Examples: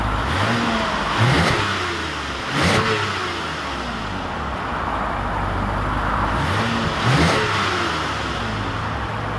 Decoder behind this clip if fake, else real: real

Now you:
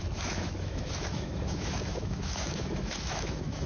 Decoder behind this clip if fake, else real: fake, autoencoder, DAC-VAE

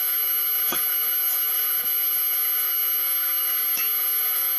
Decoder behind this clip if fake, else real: fake, autoencoder, DAC-VAE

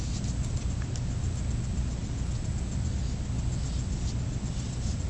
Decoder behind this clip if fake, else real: real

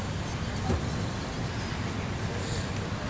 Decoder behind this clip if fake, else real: real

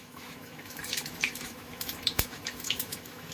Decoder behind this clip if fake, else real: fake, autoencoder, DAC-VAE